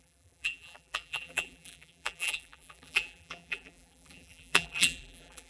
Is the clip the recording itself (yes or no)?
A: no